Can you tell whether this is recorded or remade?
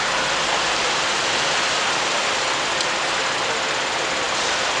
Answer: recorded